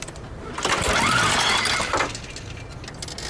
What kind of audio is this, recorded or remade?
recorded